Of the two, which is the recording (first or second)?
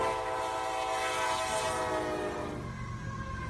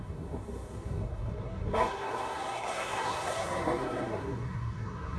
first